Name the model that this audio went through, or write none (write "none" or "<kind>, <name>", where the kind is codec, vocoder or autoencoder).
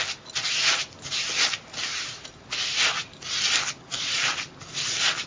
none